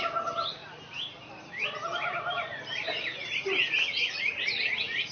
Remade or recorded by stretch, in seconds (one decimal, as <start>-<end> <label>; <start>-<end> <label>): 0.0-0.6 recorded; 0.6-3.7 remade; 3.7-5.1 recorded